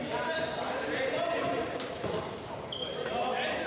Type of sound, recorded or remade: remade